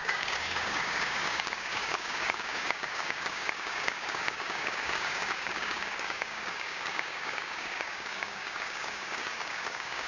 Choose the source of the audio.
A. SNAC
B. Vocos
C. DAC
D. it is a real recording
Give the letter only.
C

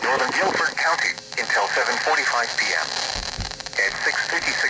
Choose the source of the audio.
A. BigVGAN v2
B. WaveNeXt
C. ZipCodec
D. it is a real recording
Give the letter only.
D